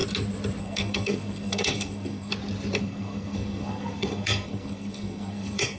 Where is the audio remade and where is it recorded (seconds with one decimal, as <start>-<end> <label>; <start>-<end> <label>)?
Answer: 0.0-0.6 recorded; 0.6-2.3 remade; 2.3-2.8 recorded; 2.8-5.8 remade